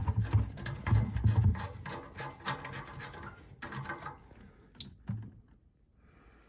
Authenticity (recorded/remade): recorded